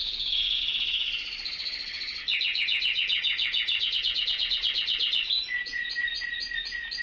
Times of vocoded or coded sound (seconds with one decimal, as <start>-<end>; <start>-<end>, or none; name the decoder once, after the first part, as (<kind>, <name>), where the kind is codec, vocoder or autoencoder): 0.0-0.6 (vocoder, Vocos); 2.5-5.9